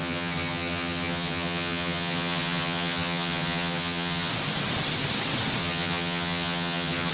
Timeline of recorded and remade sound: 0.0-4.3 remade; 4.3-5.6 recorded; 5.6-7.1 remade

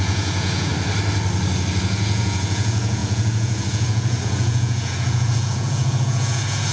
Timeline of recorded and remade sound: 0.0-0.7 remade; 0.7-1.8 recorded; 1.8-6.7 remade